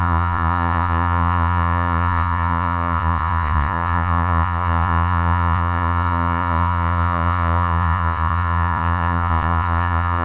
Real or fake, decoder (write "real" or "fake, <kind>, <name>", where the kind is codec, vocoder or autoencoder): fake, vocoder, Vocos